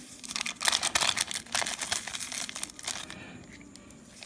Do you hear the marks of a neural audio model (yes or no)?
no